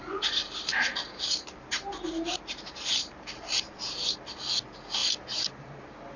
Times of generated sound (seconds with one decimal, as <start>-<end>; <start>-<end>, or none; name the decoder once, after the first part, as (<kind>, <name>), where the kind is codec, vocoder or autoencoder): 0.0-3.7 (vocoder, BigVGAN v2)